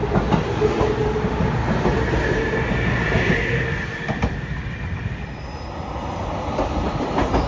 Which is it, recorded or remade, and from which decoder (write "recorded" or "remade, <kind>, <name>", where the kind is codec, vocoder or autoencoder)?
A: recorded